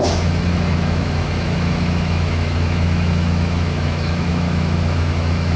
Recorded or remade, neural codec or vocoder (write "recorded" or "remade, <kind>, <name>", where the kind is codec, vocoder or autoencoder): remade, autoencoder, DAC-VAE